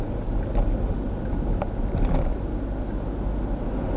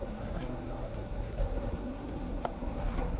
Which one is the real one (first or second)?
first